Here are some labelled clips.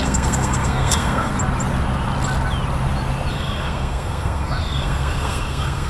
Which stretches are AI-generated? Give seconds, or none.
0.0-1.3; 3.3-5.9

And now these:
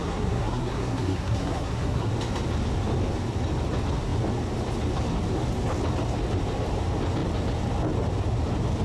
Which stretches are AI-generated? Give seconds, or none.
0.0-2.1

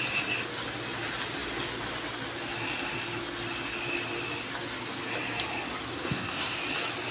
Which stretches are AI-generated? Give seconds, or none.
5.9-6.6

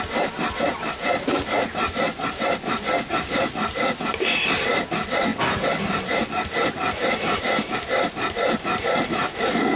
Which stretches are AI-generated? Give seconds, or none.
none

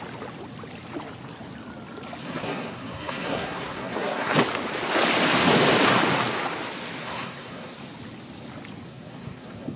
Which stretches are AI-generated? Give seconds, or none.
2.2-4.3; 7.0-7.8; 8.9-9.8